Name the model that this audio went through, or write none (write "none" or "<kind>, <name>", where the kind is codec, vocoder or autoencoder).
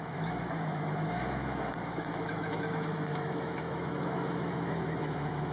autoencoder, DAC-VAE